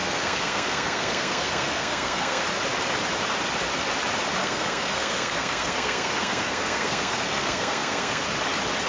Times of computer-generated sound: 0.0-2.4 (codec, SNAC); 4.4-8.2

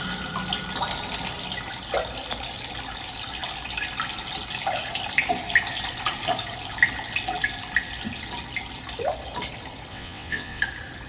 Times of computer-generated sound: 9.9-10.6 (vocoder, WaveNeXt)

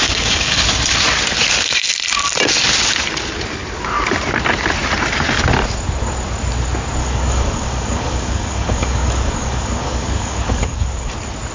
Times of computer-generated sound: 0.0-0.6 (codec, DAC); 7.0-11.1

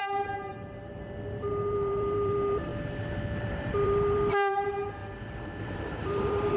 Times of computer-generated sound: 0.0-0.5 (vocoder, BigVGAN v2); 1.5-2.7; 3.4-5.0; 5.6-6.6

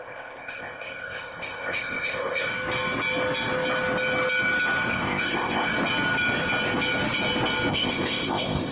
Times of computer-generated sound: 0.0-2.5 (codec, ZipCodec); 4.9-5.7; 7.7-8.7

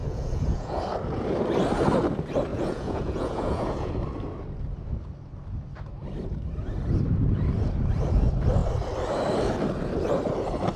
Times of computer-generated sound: 0.0-0.8 (vocoder, Vocos); 2.5-3.9

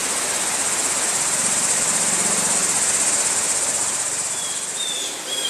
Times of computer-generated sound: 1.1-2.6 (vocoder, BigVGAN v2); 3.3-5.5

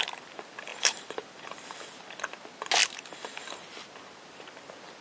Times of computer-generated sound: 0.7-1.8 (vocoder, BigVGAN v2)